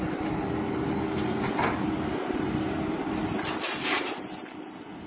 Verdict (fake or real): real